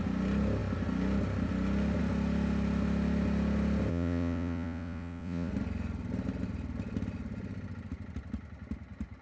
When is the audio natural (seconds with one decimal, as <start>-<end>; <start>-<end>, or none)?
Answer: 0.0-3.9; 5.5-9.2